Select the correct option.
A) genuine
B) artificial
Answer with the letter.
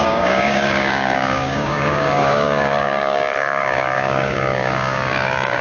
B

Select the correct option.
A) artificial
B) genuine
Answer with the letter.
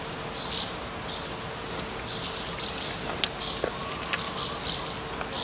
B